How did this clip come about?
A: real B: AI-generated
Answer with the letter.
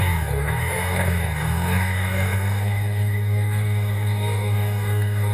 B